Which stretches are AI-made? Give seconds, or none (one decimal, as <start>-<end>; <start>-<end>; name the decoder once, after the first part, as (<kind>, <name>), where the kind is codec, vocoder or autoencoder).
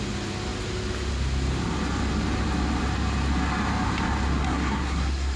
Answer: 4.3-5.4 (codec, SNAC)